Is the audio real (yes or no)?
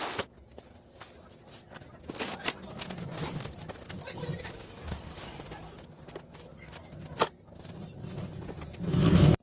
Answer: yes